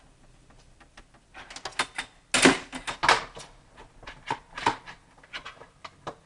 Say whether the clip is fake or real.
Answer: real